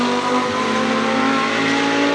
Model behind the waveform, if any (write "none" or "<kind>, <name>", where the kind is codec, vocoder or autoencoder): none